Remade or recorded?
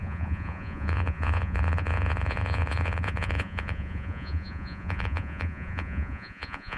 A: remade